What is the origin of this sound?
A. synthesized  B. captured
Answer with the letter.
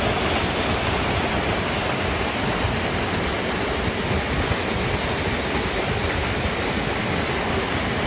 B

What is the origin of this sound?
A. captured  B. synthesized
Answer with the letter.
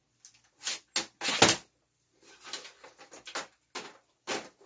A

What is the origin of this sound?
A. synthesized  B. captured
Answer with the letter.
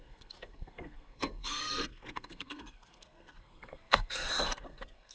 A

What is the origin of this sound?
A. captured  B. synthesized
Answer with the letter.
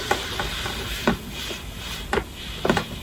A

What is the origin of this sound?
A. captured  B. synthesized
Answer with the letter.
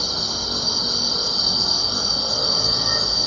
A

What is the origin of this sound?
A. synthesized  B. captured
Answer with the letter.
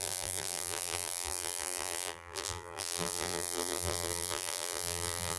A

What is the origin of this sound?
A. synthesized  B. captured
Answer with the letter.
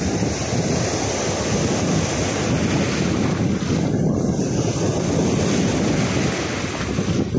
B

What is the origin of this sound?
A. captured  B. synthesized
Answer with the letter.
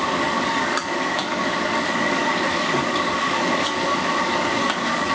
B